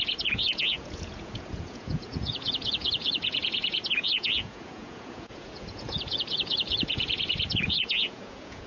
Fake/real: fake